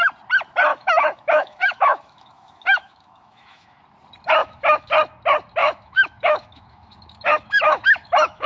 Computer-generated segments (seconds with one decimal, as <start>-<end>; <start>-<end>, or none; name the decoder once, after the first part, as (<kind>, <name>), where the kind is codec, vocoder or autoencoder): 0.7-3.8 (autoencoder, DAC-VAE); 4.4-4.9; 5.6-8.5